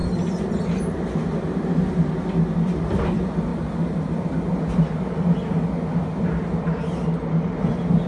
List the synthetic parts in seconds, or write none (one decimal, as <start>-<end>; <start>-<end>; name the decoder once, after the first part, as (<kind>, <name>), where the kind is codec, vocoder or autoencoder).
none

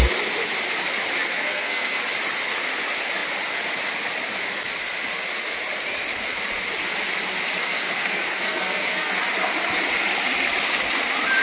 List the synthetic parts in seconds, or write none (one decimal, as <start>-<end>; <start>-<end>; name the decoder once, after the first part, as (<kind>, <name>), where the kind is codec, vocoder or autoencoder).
1.2-2.0 (codec, SNAC); 7.6-9.1

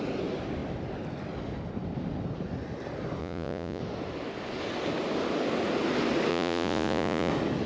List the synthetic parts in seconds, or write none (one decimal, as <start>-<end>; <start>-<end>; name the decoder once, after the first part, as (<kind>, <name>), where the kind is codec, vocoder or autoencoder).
3.2-3.8 (vocoder, Vocos); 6.3-7.3

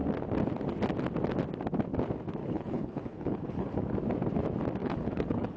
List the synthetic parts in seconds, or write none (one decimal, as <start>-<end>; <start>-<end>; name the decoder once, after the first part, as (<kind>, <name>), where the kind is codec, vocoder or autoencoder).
2.4-3.7 (codec, HILCodec); 4.8-5.6

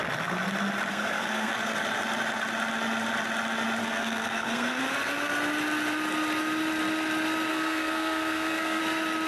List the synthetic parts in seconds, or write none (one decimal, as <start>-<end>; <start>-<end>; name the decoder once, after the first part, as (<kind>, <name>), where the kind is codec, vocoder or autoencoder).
0.9-1.5 (codec, SNAC); 3.8-4.8; 7.5-8.8

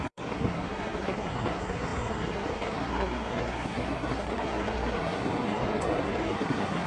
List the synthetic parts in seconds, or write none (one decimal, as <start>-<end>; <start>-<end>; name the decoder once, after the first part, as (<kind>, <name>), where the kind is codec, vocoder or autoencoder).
0.0-6.9 (codec, SNAC)